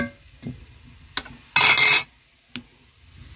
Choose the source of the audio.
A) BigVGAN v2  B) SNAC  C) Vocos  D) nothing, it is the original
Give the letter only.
D